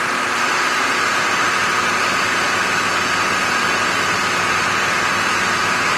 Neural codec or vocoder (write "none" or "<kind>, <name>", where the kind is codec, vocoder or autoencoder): none